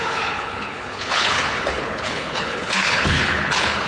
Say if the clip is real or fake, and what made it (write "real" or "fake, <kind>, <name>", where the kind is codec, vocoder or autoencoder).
fake, codec, HILCodec